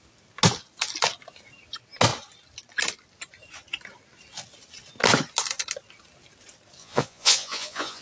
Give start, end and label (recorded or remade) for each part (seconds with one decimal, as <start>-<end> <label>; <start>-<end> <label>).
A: 0.0-6.8 recorded; 6.8-8.0 remade